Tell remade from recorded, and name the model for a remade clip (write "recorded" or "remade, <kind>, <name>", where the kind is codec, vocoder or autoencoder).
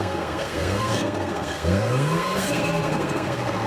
remade, codec, SNAC